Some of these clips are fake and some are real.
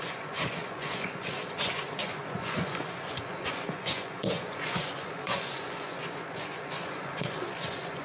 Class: fake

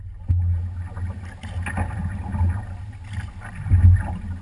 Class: real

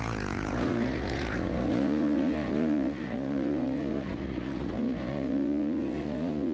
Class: fake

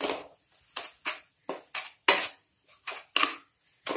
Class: real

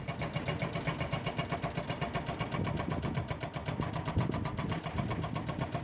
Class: real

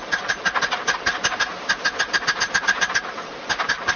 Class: real